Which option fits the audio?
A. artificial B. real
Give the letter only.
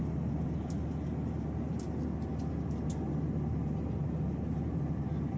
B